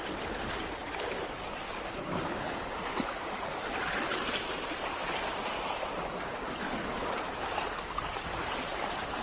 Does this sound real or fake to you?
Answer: real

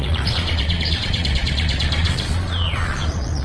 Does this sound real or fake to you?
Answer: fake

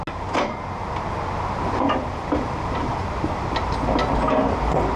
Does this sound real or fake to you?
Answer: real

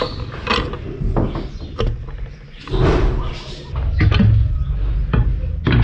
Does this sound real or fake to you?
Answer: real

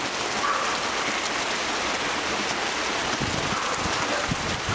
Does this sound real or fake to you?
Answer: real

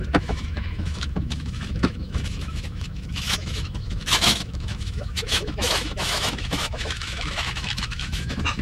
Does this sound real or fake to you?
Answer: fake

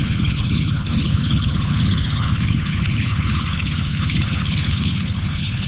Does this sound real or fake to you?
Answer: fake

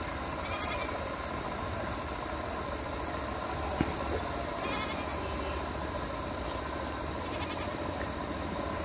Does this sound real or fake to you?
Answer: real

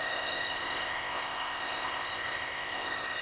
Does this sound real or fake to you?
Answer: fake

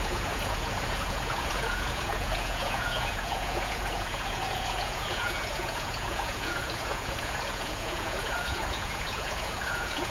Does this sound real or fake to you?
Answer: fake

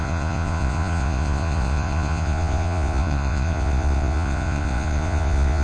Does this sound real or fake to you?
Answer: fake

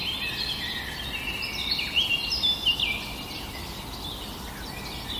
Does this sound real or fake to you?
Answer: real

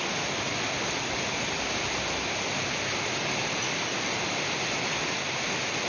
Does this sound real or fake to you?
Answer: real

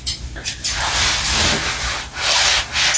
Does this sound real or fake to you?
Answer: real